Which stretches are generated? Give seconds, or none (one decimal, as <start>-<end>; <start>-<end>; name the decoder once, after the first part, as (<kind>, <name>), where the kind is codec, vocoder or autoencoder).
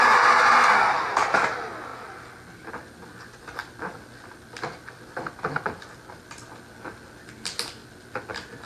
none